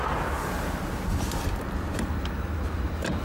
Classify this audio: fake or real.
real